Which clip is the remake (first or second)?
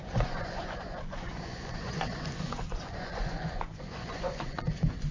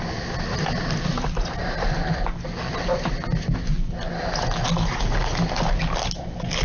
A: first